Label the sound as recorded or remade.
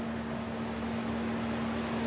recorded